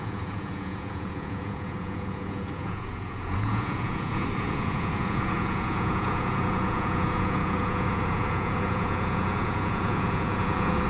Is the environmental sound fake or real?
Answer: fake